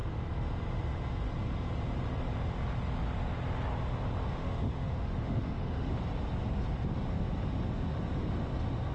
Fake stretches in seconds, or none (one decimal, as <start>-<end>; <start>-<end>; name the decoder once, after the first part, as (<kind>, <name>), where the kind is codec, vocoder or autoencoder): 4.4-5.9 (autoencoder, DAC-VAE)